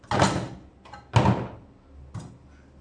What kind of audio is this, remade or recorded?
recorded